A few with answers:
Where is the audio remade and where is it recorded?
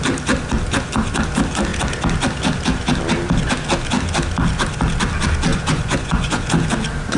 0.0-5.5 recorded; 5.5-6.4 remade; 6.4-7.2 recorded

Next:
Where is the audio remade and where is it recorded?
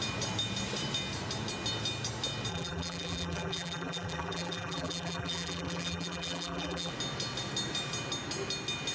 0.0-2.5 recorded; 2.5-6.9 remade; 6.9-8.9 recorded